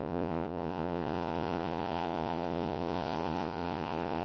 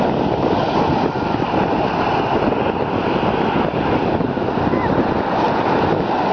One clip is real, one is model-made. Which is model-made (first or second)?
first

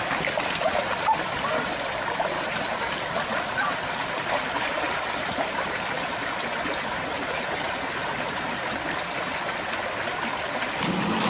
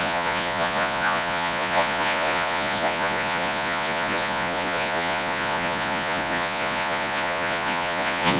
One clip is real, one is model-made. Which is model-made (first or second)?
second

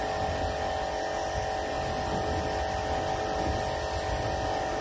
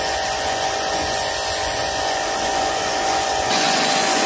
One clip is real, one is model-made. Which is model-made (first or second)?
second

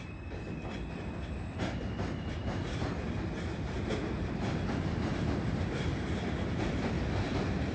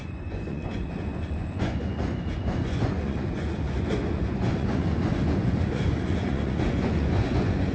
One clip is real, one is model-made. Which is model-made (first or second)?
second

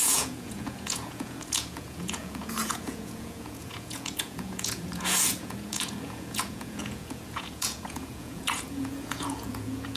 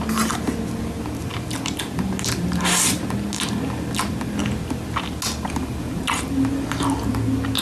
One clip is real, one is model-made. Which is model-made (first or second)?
first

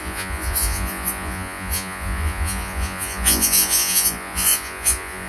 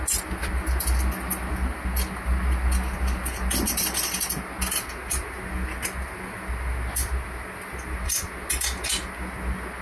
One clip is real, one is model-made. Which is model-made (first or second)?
first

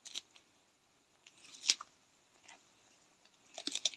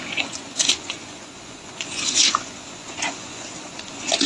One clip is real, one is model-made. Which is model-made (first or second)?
second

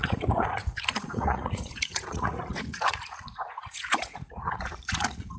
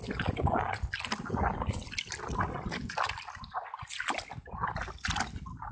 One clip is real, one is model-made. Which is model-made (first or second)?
first